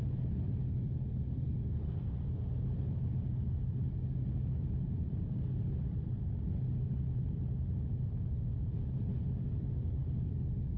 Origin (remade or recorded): recorded